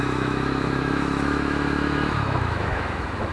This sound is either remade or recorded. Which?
remade